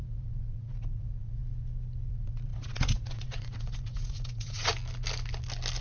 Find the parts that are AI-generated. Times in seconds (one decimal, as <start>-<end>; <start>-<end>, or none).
0.0-1.4; 2.1-4.7